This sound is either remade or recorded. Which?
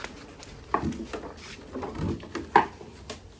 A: recorded